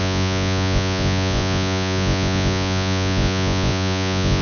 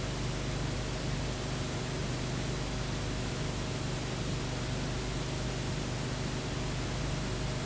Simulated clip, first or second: first